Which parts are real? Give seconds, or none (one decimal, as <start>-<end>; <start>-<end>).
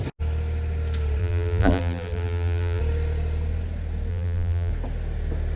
0.0-1.2; 2.8-4.1; 4.7-5.6